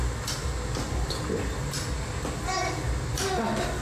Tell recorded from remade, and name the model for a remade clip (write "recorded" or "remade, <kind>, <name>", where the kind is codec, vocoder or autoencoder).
recorded